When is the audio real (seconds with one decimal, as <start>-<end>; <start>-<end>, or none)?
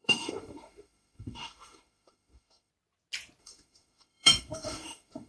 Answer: 2.7-3.4